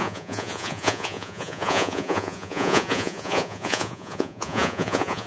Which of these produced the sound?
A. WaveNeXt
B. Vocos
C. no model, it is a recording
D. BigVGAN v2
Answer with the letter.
B